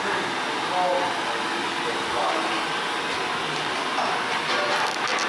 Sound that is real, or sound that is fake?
real